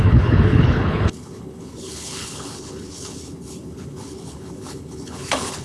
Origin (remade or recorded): remade